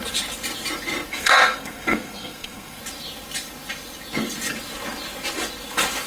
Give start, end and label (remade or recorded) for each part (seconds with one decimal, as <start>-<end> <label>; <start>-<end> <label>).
0.0-1.1 recorded; 1.1-2.8 remade; 2.8-6.1 recorded